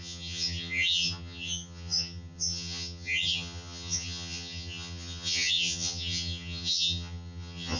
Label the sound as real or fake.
fake